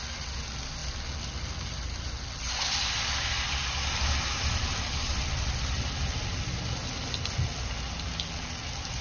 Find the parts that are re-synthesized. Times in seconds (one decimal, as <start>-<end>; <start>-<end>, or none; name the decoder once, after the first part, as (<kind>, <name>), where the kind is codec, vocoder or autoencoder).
none

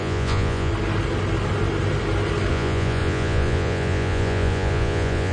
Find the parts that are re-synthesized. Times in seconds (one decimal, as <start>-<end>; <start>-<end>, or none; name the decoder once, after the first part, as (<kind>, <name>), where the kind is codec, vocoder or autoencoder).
0.0-0.7 (vocoder, Vocos); 2.5-5.3

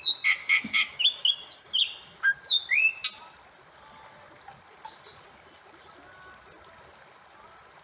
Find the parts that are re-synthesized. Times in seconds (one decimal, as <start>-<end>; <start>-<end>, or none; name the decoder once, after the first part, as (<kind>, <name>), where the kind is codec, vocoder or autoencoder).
0.4-1.7 (codec, DAC)

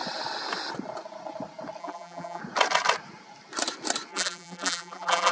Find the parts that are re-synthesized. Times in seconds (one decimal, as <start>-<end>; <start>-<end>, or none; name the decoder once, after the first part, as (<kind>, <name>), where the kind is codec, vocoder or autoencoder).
1.8-2.4 (vocoder, BigVGAN v2); 4.1-5.3